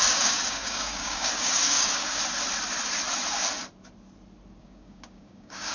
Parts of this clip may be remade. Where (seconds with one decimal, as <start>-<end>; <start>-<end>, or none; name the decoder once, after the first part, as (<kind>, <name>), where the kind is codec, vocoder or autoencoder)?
0.0-2.2 (codec, DAC); 4.6-5.7